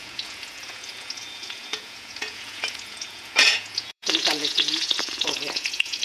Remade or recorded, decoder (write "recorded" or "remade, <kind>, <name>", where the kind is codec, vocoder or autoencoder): remade, vocoder, Vocos